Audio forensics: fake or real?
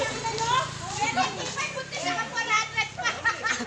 real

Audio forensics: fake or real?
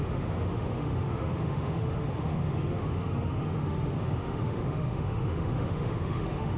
fake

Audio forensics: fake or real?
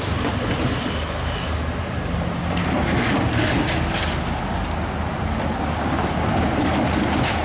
real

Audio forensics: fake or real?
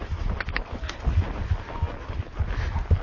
real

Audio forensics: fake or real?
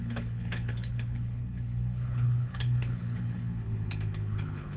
fake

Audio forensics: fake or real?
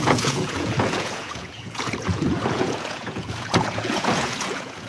fake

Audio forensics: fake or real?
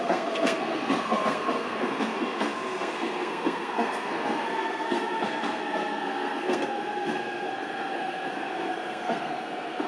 fake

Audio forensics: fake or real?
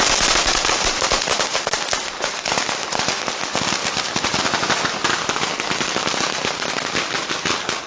real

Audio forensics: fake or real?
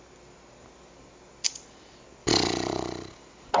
real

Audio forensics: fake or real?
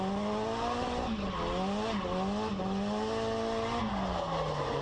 real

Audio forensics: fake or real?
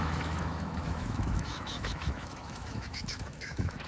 fake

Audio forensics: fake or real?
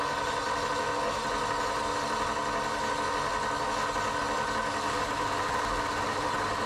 real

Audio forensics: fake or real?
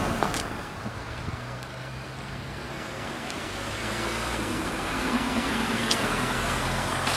fake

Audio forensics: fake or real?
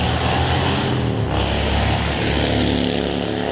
real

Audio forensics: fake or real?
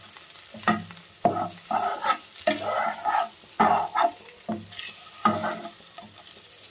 real